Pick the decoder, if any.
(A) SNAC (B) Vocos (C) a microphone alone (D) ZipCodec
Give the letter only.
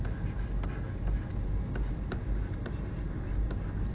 C